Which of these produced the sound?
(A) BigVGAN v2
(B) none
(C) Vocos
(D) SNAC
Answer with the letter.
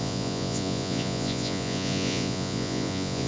C